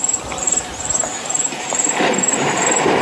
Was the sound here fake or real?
fake